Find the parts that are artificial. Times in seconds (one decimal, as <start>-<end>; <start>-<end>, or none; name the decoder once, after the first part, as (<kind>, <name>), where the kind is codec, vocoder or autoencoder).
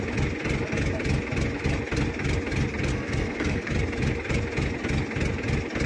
2.9-3.7 (codec, SNAC)